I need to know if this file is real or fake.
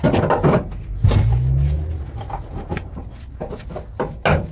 real